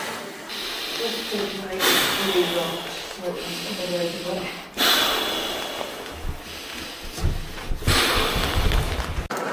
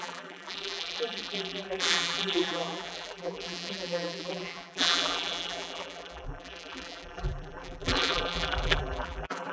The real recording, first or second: first